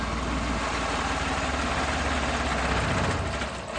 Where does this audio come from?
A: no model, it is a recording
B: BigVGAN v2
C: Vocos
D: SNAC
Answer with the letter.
A